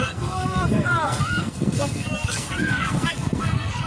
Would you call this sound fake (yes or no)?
yes